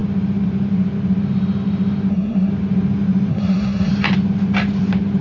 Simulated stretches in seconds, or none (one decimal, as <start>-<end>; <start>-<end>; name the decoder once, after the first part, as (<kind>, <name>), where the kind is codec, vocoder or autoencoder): 2.1-2.5 (codec, SNAC); 3.3-3.9